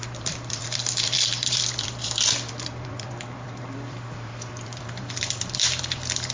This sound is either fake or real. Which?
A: fake